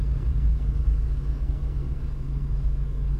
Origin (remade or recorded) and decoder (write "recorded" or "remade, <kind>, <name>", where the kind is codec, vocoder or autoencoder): remade, codec, SNAC